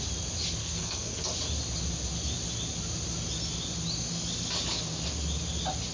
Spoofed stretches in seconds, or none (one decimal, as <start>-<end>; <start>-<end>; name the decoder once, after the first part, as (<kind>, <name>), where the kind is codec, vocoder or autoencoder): 0.6-1.2 (codec, SNAC)